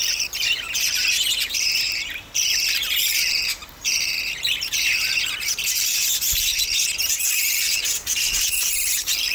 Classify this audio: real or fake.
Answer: fake